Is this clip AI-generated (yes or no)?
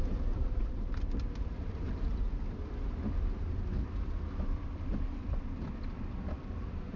yes